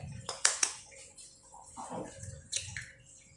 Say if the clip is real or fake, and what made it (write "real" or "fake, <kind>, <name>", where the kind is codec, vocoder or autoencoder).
fake, vocoder, Vocos